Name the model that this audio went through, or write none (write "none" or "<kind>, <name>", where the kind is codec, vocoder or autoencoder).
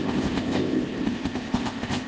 codec, ZipCodec